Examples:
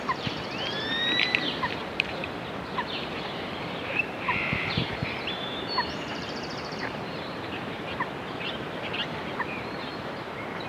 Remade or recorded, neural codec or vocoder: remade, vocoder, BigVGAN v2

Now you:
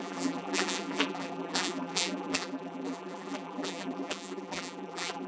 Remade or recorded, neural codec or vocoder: remade, vocoder, BigVGAN v2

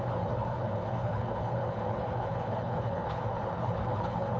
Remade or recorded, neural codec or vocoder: remade, codec, HILCodec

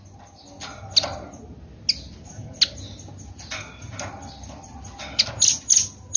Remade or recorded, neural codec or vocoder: recorded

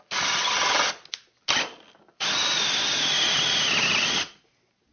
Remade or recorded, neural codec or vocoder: recorded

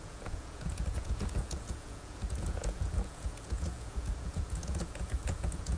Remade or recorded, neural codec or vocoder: remade, vocoder, Vocos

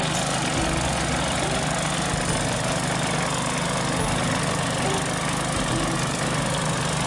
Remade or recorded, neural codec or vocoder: recorded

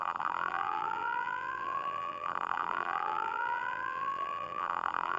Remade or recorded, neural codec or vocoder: remade, vocoder, BigVGAN v2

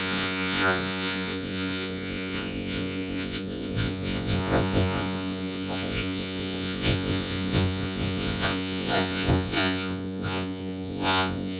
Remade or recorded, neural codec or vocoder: remade, vocoder, Vocos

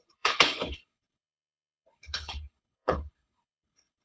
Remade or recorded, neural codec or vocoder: remade, codec, HILCodec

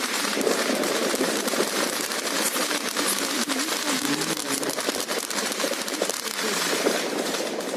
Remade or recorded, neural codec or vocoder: remade, vocoder, BigVGAN v2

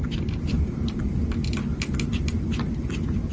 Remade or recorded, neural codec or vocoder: recorded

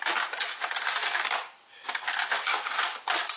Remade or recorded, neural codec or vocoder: recorded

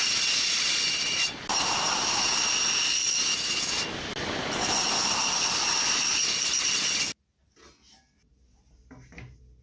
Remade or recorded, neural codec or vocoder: recorded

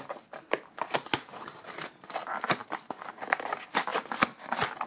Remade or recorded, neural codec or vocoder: recorded